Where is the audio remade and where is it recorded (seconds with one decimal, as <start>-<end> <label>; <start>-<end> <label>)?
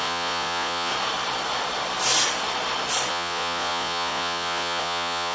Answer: 0.0-0.9 remade; 0.9-3.1 recorded; 3.1-5.3 remade